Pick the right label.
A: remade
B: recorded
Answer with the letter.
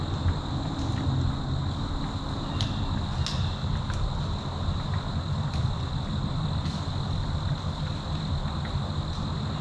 B